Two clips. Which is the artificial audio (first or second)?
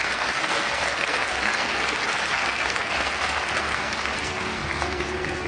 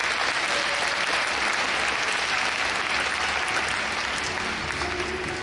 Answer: first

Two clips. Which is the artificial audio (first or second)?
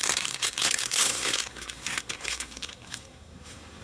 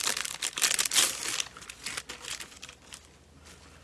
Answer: first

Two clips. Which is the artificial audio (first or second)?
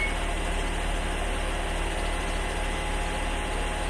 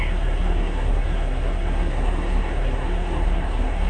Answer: second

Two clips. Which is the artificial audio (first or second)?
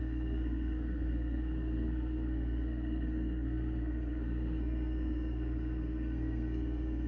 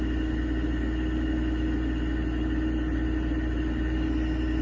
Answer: first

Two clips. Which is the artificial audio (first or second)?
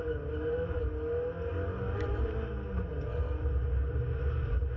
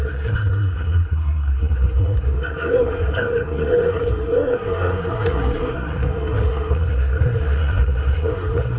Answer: second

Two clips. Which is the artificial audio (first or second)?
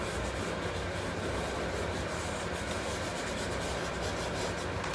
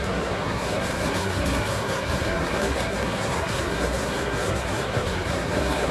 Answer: second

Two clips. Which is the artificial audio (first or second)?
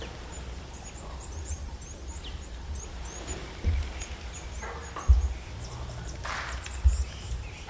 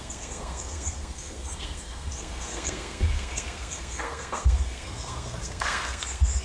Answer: second